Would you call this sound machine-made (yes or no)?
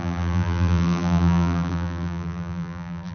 yes